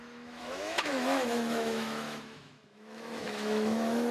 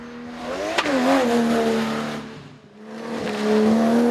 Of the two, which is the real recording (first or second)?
second